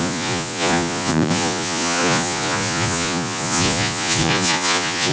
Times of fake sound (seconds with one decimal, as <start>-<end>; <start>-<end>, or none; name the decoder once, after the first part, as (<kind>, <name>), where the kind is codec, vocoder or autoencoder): 0.0-5.1 (vocoder, Vocos)